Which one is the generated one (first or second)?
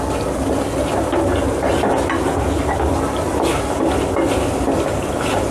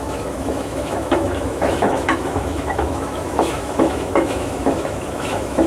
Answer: second